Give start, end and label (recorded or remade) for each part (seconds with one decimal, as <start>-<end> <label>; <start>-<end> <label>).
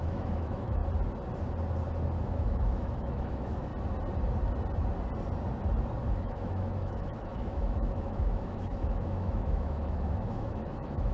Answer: 0.0-0.8 remade; 0.8-2.2 recorded; 2.2-3.7 remade; 3.7-6.1 recorded; 6.1-11.1 remade